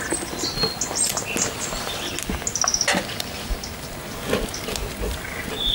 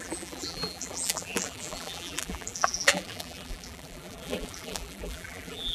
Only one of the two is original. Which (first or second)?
first